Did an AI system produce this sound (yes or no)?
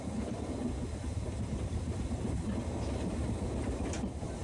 no